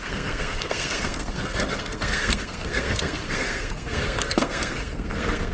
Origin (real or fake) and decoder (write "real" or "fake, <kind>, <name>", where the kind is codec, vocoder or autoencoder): fake, codec, SNAC